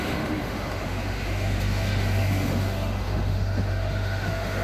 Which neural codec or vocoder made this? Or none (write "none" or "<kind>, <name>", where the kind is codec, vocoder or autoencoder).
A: autoencoder, DAC-VAE